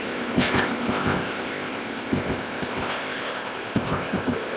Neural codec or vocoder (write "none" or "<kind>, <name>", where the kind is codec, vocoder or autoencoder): codec, ZipCodec